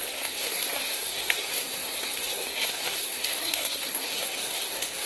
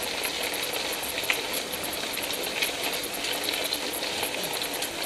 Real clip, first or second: second